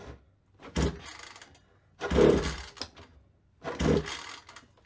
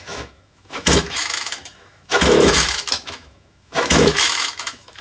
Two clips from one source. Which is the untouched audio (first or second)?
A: first